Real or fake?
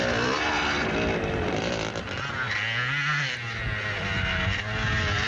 real